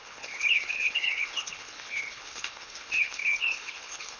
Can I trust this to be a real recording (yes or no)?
no